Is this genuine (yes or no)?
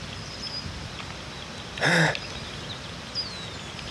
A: yes